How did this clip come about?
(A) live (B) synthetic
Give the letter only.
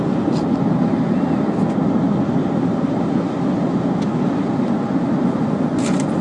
A